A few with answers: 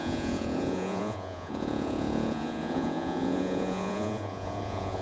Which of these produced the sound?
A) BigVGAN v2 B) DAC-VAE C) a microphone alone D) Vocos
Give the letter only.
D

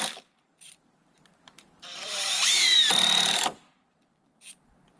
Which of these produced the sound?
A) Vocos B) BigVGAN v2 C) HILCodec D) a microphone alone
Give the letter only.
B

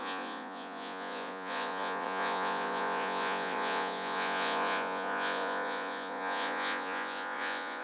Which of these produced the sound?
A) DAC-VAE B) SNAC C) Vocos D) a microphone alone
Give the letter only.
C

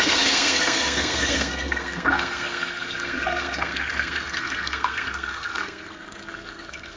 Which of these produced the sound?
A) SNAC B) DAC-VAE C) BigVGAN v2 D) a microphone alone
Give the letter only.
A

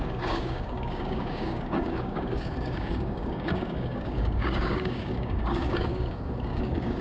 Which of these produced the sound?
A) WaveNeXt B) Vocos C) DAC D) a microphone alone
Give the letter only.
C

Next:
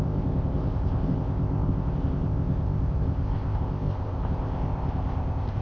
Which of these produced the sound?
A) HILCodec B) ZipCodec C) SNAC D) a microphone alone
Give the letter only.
B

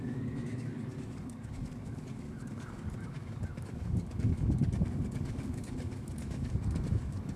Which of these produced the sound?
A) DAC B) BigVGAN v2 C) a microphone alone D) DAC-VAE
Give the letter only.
A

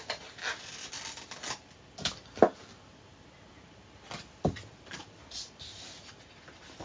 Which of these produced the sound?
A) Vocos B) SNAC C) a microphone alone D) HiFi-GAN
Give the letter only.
C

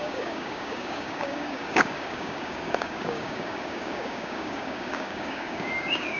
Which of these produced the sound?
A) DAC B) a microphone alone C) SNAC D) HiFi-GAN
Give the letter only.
A